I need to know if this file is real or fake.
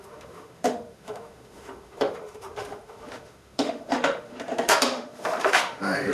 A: fake